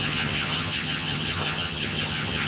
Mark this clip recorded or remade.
remade